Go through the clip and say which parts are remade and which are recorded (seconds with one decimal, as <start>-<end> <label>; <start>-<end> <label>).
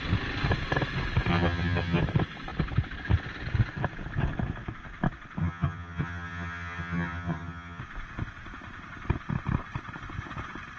0.0-1.3 recorded; 1.3-2.0 remade; 2.0-5.4 recorded; 5.4-7.8 remade; 7.8-10.8 recorded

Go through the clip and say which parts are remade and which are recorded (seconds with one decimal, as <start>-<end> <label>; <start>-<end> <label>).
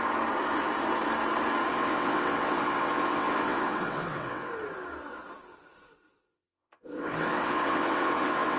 0.0-1.7 recorded; 1.7-4.5 remade; 4.5-6.3 recorded; 6.3-8.6 remade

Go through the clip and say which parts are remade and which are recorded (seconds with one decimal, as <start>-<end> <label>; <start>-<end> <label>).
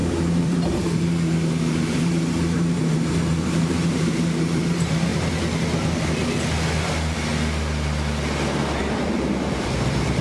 0.0-5.1 remade; 5.1-6.8 recorded; 6.8-7.3 remade; 7.3-8.8 recorded; 8.8-10.2 remade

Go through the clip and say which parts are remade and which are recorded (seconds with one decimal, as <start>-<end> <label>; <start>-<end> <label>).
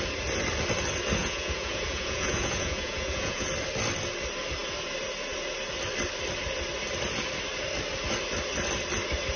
0.0-1.2 recorded; 1.2-3.5 remade; 3.5-9.4 recorded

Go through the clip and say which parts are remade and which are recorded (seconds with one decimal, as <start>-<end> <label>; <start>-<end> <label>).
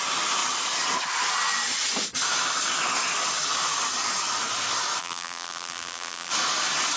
0.0-5.0 recorded; 5.0-6.3 remade; 6.3-7.0 recorded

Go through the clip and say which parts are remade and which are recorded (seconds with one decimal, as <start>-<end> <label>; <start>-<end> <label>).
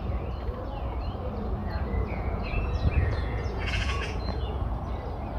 0.0-1.6 recorded; 1.6-4.8 remade; 4.8-5.4 recorded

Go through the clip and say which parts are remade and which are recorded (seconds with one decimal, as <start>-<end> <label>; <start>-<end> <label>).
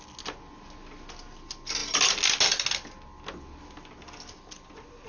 0.0-5.1 recorded